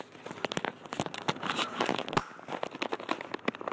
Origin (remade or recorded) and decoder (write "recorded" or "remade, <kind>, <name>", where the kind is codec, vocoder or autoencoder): recorded